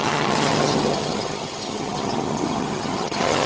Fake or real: fake